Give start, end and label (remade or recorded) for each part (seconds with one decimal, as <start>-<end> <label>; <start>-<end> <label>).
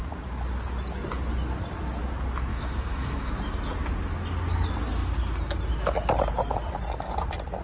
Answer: 0.0-2.5 recorded; 2.5-3.3 remade; 3.3-7.6 recorded